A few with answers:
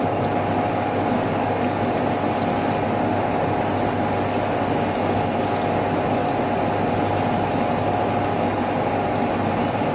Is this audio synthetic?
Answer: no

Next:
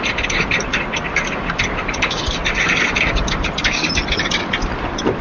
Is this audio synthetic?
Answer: no